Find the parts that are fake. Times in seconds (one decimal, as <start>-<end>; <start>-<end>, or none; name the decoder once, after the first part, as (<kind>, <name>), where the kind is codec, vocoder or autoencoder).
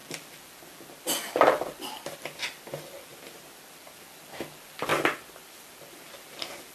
0.0-3.1 (vocoder, BigVGAN v2); 3.6-4.9; 5.6-6.7